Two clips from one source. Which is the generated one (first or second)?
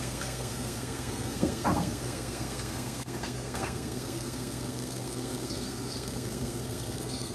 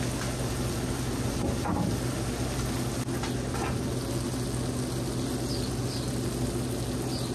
first